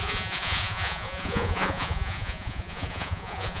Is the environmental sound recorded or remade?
remade